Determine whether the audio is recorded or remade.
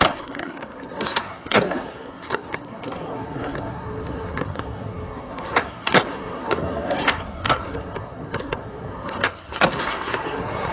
remade